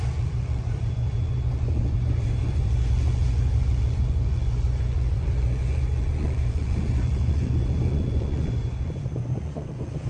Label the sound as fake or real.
fake